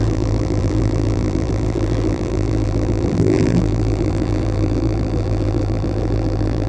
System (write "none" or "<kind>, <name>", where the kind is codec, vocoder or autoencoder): vocoder, BigVGAN v2